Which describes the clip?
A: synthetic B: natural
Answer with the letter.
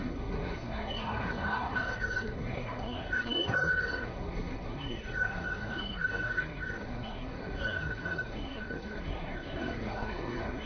A